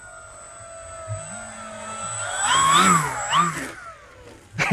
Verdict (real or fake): real